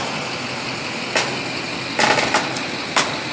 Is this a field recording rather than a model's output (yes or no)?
yes